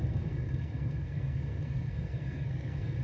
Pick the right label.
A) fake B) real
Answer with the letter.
A